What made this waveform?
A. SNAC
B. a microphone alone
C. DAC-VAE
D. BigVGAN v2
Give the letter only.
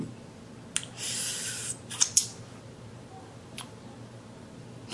B